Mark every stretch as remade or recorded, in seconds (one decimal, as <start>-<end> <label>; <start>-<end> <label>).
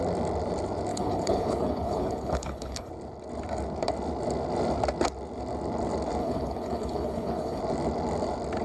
0.0-0.9 recorded; 0.9-2.9 remade; 2.9-6.2 recorded; 6.2-7.6 remade; 7.6-8.6 recorded